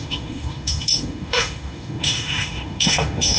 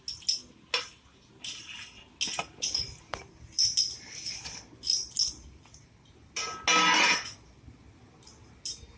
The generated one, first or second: first